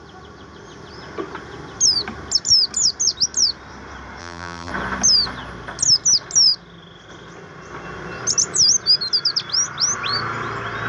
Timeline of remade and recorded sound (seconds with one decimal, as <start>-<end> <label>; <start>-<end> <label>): 0.0-4.2 recorded; 4.2-4.7 remade; 4.7-10.9 recorded

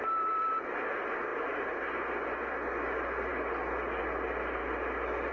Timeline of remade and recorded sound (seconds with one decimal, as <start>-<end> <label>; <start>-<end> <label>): 0.0-5.3 recorded

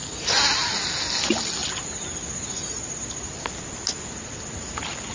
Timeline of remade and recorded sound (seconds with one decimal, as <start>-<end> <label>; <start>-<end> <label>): 0.0-5.1 recorded

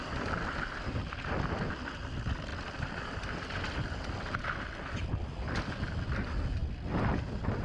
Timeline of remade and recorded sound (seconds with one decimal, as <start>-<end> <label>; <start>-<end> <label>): 0.0-2.5 recorded; 2.5-5.1 remade; 5.1-7.6 recorded

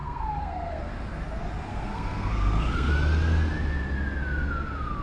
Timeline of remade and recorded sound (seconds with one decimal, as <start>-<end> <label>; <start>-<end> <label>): 0.0-0.9 remade; 0.9-1.7 recorded; 1.7-2.9 remade; 2.9-5.0 recorded

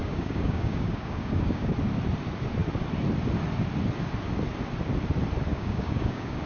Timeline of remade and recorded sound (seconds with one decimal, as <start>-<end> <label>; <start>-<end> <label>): 0.0-1.7 remade; 1.7-5.5 recorded; 5.5-6.5 remade

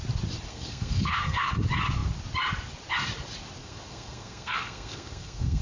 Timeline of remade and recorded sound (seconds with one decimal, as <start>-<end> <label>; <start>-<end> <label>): 0.0-0.5 recorded; 0.5-1.5 remade; 1.5-3.6 recorded; 3.6-5.6 remade

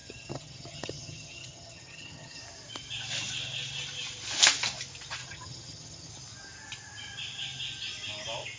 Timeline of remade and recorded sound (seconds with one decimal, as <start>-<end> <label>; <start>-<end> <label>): 0.0-2.4 remade; 2.4-5.2 recorded; 5.2-6.1 remade; 6.1-8.6 recorded